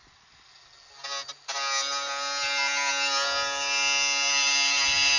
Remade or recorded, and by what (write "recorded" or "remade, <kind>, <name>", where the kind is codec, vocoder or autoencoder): recorded